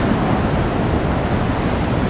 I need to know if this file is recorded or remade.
recorded